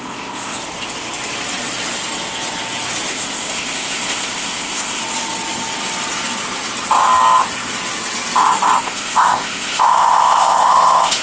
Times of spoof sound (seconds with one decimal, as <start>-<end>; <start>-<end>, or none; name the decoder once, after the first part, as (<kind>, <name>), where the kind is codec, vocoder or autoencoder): 0.0-0.6 (codec, ZipCodec); 3.1-5.0; 8.8-11.2

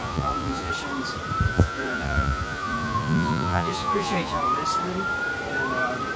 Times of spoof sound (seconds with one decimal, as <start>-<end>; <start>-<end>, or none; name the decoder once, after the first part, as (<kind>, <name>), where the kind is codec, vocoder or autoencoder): 0.0-0.7 (vocoder, Vocos); 1.5-4.4

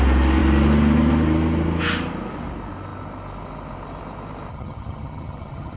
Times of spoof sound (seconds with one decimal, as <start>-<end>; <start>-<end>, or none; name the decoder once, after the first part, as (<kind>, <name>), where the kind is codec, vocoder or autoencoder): 4.5-5.8 (vocoder, HiFi-GAN)

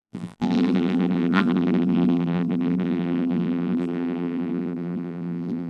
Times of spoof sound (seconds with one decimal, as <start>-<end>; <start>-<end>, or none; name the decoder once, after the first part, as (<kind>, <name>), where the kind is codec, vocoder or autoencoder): 0.0-5.7 (vocoder, BigVGAN v2)

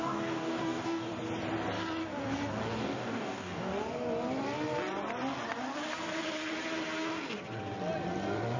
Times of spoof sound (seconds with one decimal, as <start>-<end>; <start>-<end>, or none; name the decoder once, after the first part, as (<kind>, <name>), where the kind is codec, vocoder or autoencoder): 0.0-1.1 (codec, DAC); 2.8-3.7

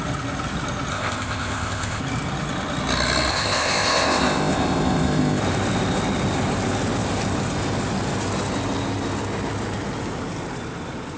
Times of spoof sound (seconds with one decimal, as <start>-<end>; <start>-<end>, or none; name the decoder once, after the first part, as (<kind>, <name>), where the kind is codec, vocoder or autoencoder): 0.9-2.0 (codec, ZipCodec); 3.3-5.4

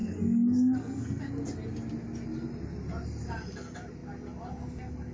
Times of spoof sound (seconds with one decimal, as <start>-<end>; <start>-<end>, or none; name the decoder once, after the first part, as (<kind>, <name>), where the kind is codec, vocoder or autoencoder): 0.0-1.2 (codec, SNAC)